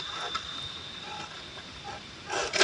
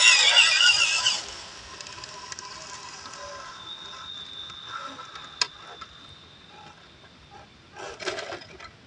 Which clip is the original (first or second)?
second